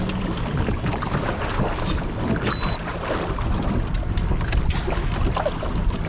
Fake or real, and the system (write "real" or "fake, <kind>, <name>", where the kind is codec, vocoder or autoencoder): real